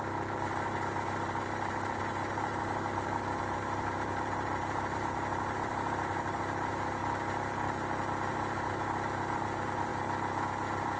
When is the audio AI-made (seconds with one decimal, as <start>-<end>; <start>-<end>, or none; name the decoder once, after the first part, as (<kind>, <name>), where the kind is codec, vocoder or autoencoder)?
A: 0.0-7.0 (vocoder, BigVGAN v2); 8.3-9.9

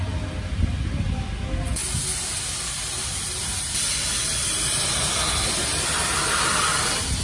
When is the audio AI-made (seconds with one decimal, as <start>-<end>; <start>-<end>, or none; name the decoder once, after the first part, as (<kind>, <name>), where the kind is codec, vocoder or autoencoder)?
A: none

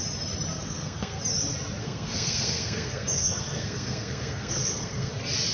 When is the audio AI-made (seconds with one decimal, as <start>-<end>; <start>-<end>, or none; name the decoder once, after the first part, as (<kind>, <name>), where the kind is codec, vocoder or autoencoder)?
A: 0.5-1.2 (codec, SNAC); 1.8-5.1

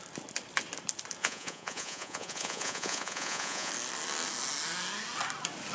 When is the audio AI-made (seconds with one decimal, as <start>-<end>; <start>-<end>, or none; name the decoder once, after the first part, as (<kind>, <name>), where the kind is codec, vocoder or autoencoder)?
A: 1.2-3.7 (vocoder, Vocos)

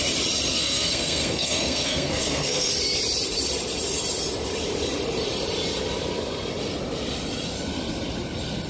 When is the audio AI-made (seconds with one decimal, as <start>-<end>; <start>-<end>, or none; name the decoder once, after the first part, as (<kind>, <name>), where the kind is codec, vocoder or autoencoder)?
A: 0.5-2.7 (codec, SNAC)